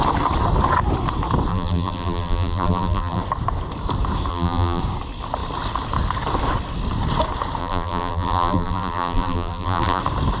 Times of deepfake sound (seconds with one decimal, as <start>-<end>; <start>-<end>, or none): 1.5-3.2; 4.3-4.8; 7.6-10.0